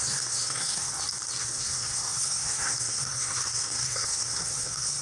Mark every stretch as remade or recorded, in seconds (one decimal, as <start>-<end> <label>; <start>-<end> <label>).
0.0-0.9 remade; 0.9-1.4 recorded; 1.4-5.0 remade